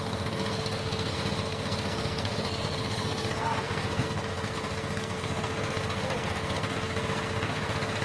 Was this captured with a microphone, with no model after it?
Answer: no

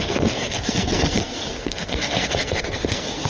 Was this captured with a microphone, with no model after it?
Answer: no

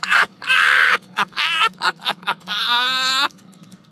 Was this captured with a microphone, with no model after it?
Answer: no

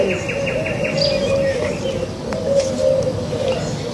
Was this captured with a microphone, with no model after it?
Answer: yes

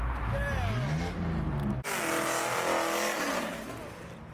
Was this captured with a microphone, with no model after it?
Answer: yes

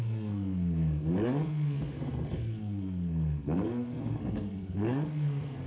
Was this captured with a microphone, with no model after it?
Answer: no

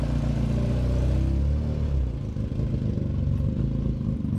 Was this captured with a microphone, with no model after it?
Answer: yes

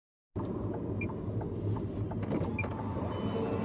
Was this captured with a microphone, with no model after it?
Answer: yes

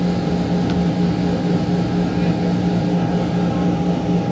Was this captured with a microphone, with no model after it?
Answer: yes